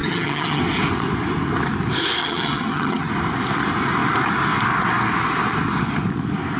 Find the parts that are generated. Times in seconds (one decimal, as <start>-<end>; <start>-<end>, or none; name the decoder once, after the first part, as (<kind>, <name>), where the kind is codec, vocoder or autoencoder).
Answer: 0.0-0.6 (vocoder, HiFi-GAN); 2.2-3.1